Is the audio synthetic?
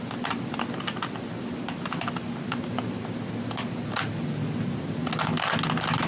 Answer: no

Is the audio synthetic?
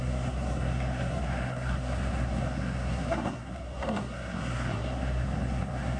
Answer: yes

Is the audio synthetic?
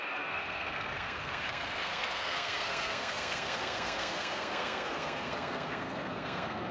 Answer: yes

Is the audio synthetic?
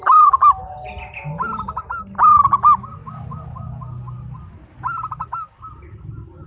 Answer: no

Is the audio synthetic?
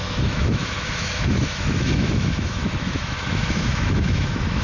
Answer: yes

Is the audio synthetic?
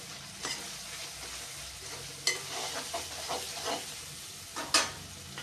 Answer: no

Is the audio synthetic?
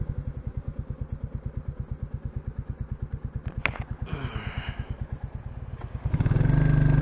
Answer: no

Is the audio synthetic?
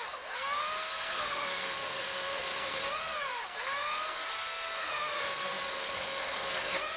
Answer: yes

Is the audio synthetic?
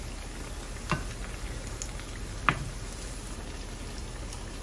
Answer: no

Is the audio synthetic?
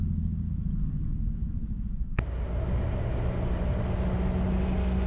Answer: no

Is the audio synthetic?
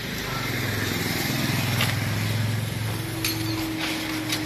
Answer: no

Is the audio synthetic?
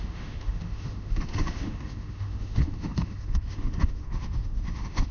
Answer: yes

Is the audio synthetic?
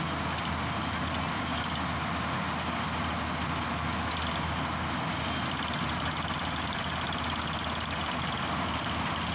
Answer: no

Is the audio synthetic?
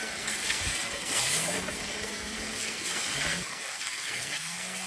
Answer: yes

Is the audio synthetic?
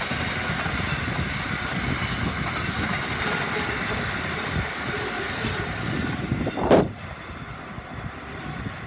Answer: no